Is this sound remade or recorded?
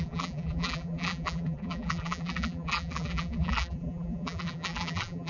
remade